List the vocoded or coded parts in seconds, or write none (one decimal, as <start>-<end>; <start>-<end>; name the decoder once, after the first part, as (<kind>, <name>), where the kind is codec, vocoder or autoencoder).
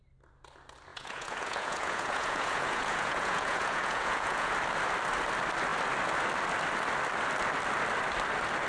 0.9-4.5 (vocoder, Vocos)